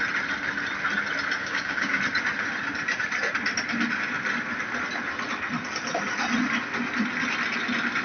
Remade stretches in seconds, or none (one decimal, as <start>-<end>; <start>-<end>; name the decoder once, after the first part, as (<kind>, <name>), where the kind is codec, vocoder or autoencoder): 1.4-2.0 (codec, DAC)

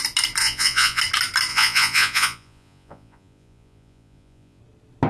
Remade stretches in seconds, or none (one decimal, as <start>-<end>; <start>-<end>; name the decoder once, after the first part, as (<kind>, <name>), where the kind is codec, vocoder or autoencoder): 0.4-1.0 (vocoder, Vocos); 1.5-4.6

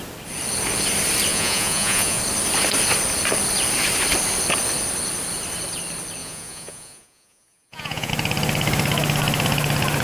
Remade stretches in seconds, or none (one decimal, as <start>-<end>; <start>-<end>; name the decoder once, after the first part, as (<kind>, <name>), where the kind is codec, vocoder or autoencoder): 1.3-2.2 (vocoder, Vocos); 6.2-8.1

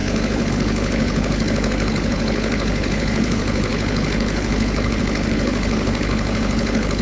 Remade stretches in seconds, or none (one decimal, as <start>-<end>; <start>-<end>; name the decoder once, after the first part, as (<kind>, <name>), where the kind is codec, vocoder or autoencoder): 0.0-7.0 (codec, HILCodec)